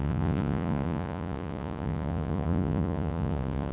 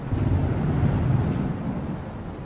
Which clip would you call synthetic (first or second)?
first